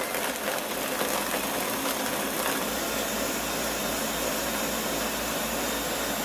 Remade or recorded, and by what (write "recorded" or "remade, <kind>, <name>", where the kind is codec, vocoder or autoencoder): recorded